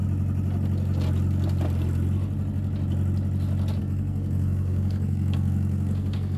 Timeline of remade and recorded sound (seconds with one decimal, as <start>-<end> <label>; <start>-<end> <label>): 0.0-3.8 recorded; 3.8-6.4 remade